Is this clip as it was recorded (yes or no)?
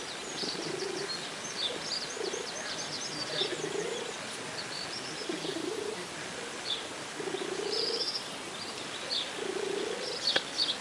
yes